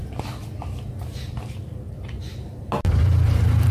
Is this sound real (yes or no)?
no